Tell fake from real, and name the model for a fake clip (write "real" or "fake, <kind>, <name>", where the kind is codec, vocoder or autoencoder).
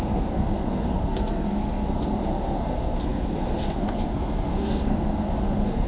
fake, codec, SNAC